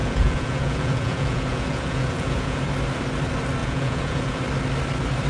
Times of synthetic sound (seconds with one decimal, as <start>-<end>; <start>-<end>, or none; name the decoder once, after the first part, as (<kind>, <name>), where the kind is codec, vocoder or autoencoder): 0.0-2.6 (vocoder, Vocos); 3.6-4.4